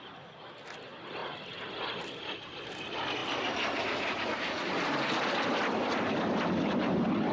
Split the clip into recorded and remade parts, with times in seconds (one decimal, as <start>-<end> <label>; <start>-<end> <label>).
0.0-7.3 recorded